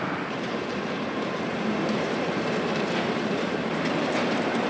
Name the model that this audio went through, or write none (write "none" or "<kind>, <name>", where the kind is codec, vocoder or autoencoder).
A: vocoder, BigVGAN v2